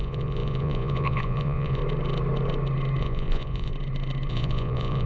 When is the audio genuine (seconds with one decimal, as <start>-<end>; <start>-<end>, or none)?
1.8-3.0; 3.7-4.3